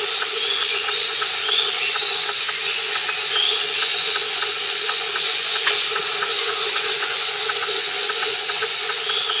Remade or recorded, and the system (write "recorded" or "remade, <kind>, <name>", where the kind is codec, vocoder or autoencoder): remade, vocoder, Vocos